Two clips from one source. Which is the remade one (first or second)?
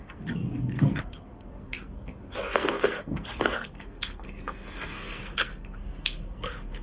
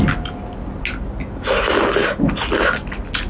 first